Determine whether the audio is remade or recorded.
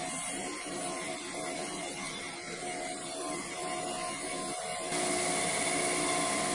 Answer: recorded